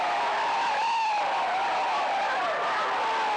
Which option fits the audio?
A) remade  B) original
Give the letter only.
B